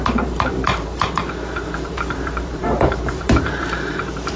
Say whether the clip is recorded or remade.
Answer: remade